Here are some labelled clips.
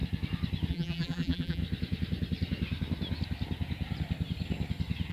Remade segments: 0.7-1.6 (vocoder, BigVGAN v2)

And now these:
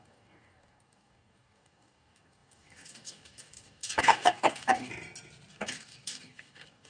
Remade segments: 0.0-4.9 (codec, DAC); 5.5-6.9

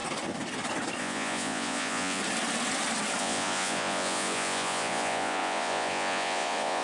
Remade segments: 1.0-2.2 (vocoder, Vocos); 3.2-6.8

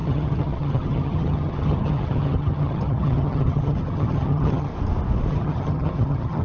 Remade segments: 0.0-4.7 (vocoder, HiFi-GAN); 5.3-6.4

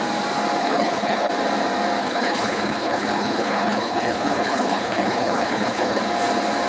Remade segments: 0.6-1.3 (codec, HILCodec); 2.0-6.0